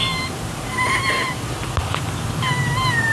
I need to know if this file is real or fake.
real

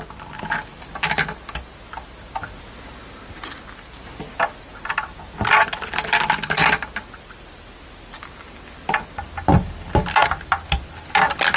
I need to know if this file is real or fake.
real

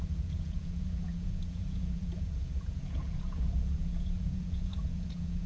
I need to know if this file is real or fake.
fake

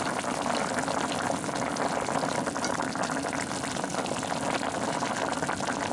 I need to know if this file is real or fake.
real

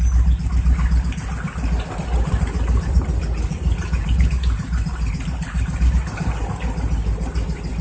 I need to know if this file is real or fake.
real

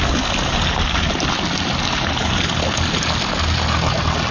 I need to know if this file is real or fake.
real